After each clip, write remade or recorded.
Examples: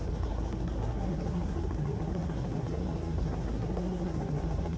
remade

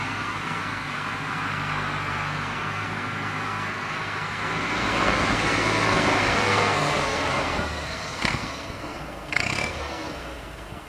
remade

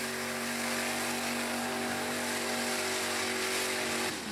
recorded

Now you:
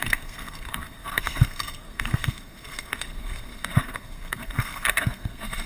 remade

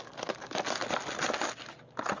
recorded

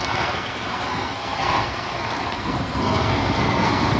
remade